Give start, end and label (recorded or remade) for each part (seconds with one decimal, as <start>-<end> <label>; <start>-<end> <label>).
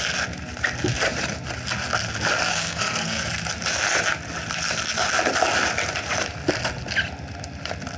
0.0-2.5 recorded; 2.5-3.3 remade; 3.3-8.0 recorded